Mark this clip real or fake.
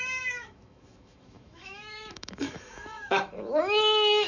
fake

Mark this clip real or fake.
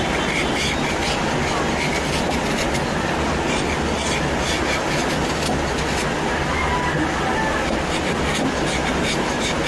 real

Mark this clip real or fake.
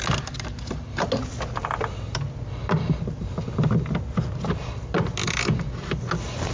real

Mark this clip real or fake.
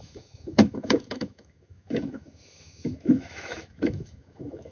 fake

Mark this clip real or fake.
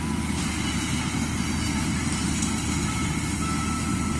real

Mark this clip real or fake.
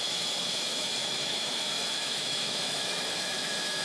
fake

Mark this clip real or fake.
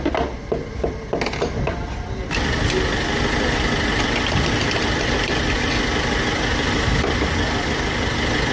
real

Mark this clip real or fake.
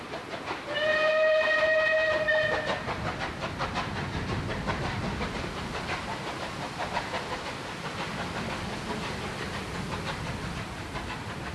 real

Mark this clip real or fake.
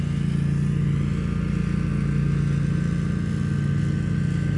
real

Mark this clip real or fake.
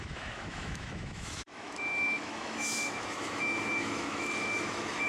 fake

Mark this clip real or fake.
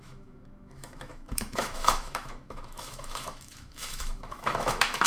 fake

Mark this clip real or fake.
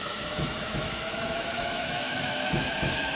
fake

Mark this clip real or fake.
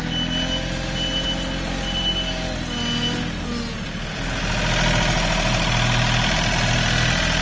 real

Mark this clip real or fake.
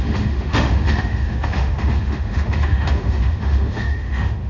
fake